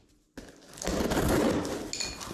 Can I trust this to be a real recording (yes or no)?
yes